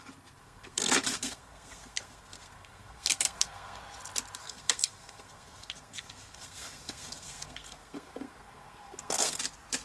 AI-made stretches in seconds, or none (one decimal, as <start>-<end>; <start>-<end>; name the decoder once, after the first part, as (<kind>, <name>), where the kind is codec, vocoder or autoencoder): 0.4-3.8 (codec, SNAC); 4.4-9.4